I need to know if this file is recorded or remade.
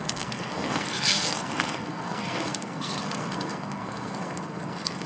remade